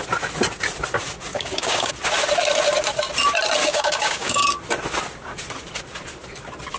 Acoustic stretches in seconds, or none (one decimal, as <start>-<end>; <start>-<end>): 0.0-1.3; 1.9-3.6; 4.4-6.8